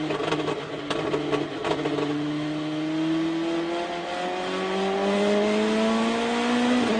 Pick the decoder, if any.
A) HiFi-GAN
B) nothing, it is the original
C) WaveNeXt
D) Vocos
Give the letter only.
B